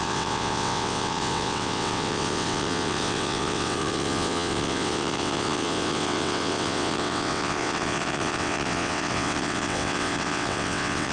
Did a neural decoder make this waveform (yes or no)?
yes